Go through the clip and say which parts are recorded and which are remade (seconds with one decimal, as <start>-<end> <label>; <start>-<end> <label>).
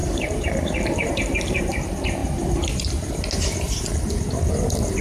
0.0-1.6 remade; 1.6-5.0 recorded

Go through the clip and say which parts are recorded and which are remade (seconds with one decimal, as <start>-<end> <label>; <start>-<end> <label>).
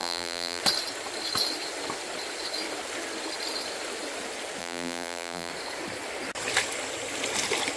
0.0-0.6 remade; 0.6-4.6 recorded; 4.6-5.5 remade; 5.5-7.8 recorded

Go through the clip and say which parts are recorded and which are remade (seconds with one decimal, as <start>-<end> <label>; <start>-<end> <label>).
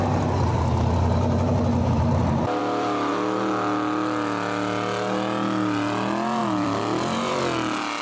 0.0-2.6 recorded; 2.6-3.1 remade; 3.1-6.4 recorded; 6.4-7.4 remade; 7.4-8.0 recorded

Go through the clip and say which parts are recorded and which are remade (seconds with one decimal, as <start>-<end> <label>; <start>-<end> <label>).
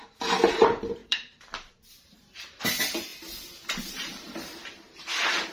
0.0-3.1 remade; 3.1-3.9 recorded; 3.9-5.5 remade